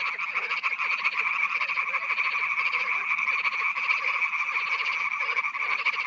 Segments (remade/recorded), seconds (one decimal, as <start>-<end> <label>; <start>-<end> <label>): 0.0-2.9 remade; 2.9-5.4 recorded; 5.4-6.1 remade